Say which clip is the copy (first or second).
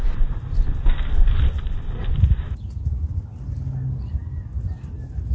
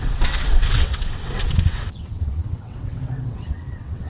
second